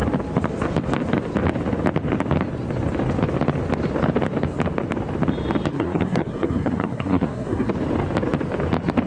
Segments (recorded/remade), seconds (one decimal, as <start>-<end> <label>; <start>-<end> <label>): 0.0-5.7 recorded; 5.7-7.7 remade; 7.7-9.1 recorded